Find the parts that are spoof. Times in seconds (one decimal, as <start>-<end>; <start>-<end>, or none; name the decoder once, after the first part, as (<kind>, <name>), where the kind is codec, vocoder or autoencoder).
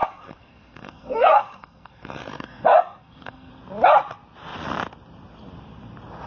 0.0-3.5 (codec, SNAC)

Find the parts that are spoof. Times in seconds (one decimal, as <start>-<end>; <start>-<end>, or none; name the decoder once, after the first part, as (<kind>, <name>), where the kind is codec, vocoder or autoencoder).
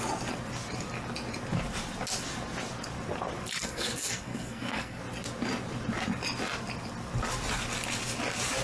3.6-5.0 (codec, SNAC)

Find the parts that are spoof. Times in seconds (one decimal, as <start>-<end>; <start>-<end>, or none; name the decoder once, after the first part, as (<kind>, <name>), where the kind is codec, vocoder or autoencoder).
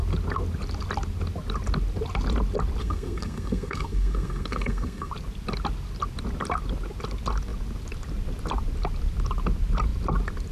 2.8-5.1 (codec, SNAC)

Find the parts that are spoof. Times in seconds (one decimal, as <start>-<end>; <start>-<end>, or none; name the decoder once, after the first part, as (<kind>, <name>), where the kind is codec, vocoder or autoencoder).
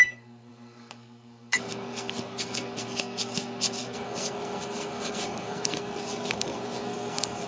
0.0-7.5 (codec, SNAC)